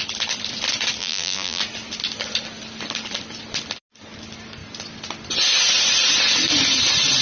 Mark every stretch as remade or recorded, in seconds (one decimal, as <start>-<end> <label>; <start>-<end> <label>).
0.0-1.0 recorded; 1.0-1.6 remade; 1.6-7.2 recorded